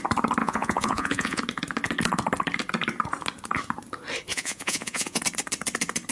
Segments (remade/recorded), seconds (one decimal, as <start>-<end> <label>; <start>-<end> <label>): 0.0-0.4 recorded; 0.4-1.4 remade; 1.4-4.3 recorded; 4.3-5.2 remade; 5.2-6.1 recorded